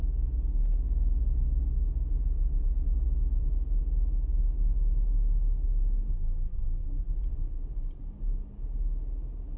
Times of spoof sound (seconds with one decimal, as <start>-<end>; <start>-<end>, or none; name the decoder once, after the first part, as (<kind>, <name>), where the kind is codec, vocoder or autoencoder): 6.1-7.1 (vocoder, BigVGAN v2)